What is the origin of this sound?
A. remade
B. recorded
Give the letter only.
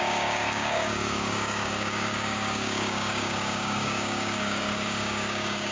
A